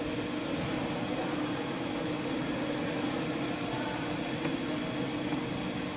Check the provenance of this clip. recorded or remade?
recorded